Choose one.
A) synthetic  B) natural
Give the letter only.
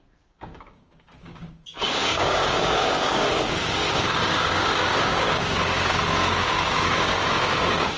A